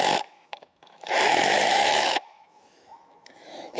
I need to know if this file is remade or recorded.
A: remade